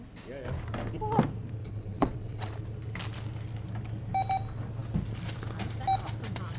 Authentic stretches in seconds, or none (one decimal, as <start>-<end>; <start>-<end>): 0.0-1.6; 2.5-6.6